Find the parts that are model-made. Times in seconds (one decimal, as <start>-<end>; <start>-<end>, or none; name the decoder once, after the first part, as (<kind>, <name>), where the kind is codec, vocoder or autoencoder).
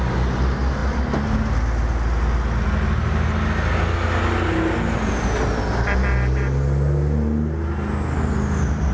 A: none